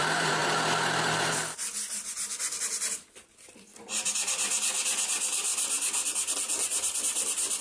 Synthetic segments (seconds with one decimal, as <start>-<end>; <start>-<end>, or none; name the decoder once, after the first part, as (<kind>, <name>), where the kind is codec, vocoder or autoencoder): 0.0-0.4 (vocoder, BigVGAN v2); 2.6-5.5; 7.0-7.6